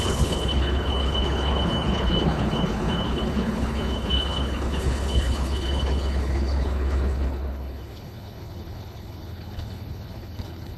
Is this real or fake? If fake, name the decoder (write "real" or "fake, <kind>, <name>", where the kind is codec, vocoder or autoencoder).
fake, codec, HILCodec